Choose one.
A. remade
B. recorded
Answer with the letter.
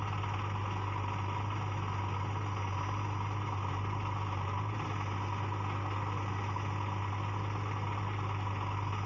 B